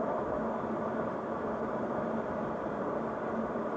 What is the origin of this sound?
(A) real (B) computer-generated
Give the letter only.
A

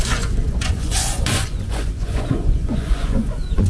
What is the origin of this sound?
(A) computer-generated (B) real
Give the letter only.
A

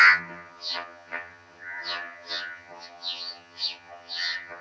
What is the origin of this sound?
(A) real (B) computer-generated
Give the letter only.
B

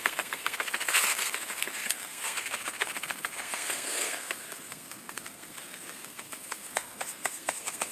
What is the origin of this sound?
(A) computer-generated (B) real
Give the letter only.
A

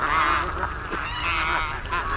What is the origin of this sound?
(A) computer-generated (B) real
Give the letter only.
B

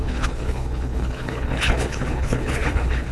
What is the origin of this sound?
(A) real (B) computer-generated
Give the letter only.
B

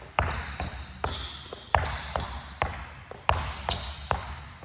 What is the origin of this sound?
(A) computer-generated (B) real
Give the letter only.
B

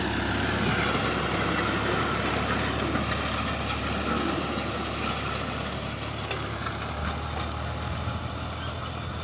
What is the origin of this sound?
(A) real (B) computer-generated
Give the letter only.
A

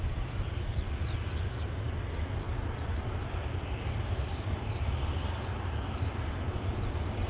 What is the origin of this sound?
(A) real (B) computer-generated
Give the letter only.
A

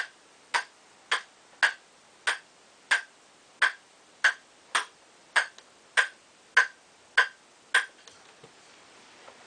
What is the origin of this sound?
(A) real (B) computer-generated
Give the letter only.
A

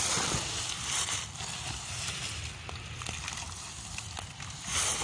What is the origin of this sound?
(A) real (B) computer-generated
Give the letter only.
A